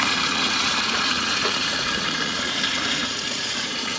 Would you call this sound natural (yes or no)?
no